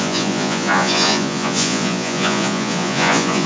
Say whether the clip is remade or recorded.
remade